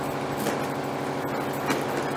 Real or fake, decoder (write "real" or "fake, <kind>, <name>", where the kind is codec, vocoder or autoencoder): real